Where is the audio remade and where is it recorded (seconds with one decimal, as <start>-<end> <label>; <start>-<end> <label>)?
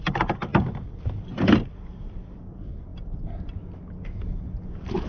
0.0-5.1 recorded